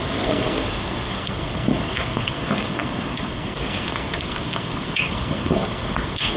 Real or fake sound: fake